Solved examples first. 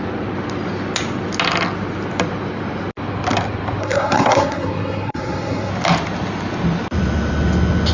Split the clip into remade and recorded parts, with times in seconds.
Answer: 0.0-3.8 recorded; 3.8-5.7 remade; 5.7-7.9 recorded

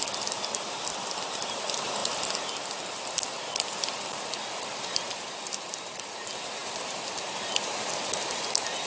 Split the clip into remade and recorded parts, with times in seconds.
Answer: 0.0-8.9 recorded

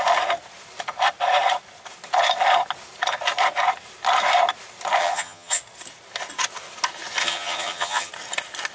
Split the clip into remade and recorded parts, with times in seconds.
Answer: 0.0-5.0 recorded; 5.0-5.6 remade; 5.6-7.2 recorded; 7.2-8.1 remade; 8.1-8.7 recorded

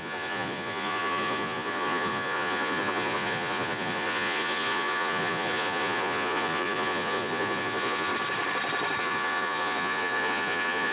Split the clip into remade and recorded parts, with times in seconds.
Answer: 0.0-8.1 remade; 8.1-9.0 recorded; 9.0-10.9 remade

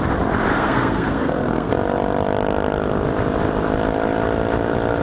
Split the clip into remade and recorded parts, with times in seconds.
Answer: 0.0-0.5 recorded; 0.5-1.7 remade; 1.7-5.0 recorded